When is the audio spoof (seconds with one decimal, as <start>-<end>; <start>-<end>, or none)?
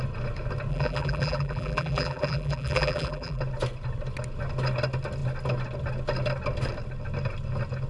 0.7-3.4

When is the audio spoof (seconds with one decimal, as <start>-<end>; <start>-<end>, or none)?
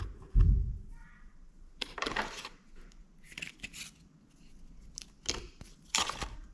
0.0-3.0; 5.5-6.5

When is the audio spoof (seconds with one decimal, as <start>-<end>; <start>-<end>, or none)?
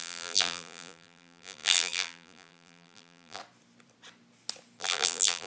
0.0-3.4; 4.8-5.5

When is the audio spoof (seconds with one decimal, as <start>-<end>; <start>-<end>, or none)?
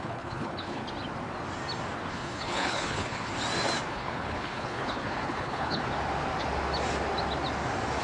0.0-0.8; 2.1-3.3; 3.9-5.8